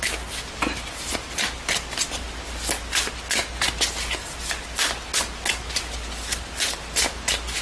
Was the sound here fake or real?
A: real